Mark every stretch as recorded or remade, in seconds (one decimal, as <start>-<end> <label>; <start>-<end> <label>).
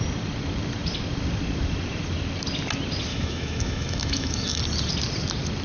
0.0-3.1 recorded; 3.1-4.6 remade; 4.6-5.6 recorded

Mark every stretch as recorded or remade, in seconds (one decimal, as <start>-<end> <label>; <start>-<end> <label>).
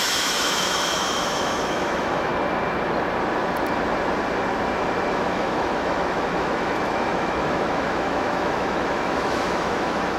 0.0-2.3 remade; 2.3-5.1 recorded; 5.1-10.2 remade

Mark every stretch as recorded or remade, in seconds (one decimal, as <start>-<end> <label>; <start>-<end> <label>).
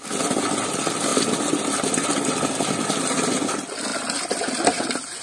0.0-5.2 recorded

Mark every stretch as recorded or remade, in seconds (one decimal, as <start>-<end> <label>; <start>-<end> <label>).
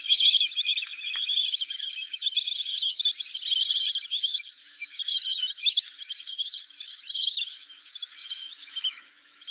0.0-3.0 remade; 3.0-4.1 recorded; 4.1-9.5 remade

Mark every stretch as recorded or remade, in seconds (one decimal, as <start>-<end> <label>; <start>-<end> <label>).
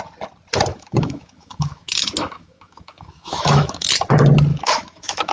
0.0-0.7 recorded; 0.7-3.9 remade; 3.9-4.5 recorded; 4.5-5.3 remade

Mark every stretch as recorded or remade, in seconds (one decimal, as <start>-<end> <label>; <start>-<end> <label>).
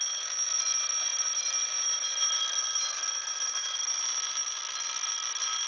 0.0-5.7 recorded